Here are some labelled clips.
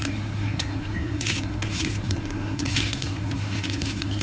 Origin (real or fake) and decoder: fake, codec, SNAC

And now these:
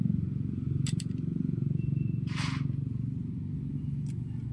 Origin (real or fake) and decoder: real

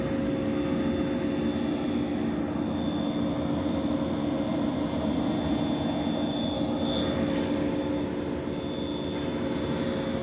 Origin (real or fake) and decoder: real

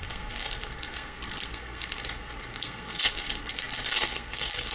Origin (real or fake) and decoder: fake, codec, SNAC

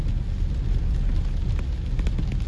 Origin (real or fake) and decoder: real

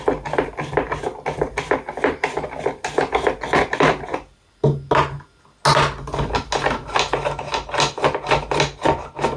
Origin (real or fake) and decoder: real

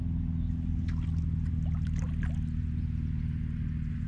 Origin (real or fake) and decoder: real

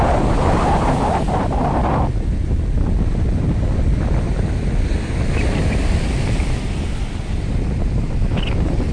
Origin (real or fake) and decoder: real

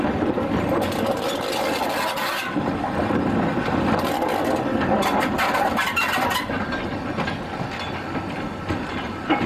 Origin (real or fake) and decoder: real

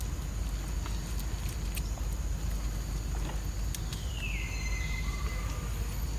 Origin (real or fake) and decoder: real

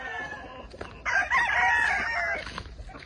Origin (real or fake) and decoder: real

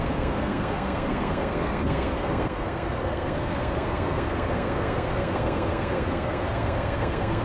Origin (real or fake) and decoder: fake, codec, SNAC